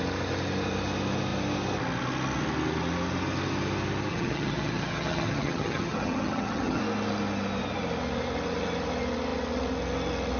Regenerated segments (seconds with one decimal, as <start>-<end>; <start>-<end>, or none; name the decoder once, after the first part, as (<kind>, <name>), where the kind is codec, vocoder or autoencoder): 4.1-6.8 (vocoder, HiFi-GAN)